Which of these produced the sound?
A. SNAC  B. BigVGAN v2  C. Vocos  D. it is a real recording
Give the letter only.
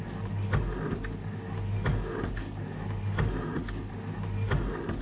D